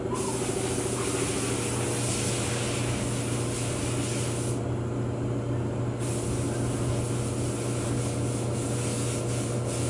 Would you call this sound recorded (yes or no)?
yes